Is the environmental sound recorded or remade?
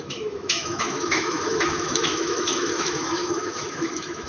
remade